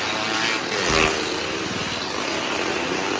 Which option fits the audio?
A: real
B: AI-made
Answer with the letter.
A